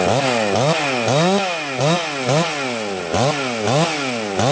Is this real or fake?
real